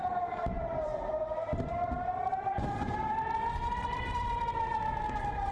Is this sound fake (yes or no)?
yes